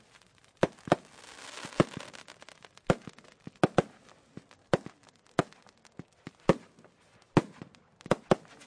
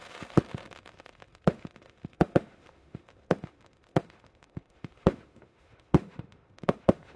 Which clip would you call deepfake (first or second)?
second